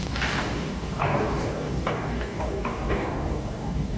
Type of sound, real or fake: fake